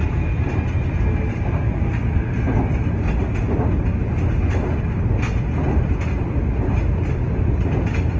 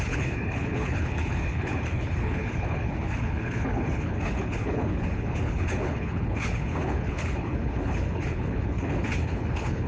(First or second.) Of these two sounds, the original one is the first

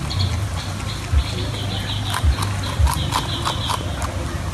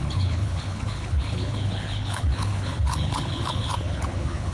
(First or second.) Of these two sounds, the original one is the first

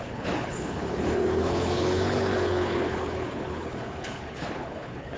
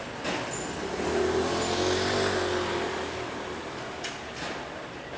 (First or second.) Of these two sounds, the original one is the second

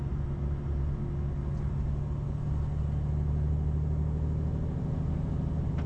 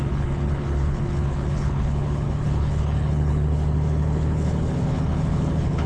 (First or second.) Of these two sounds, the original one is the first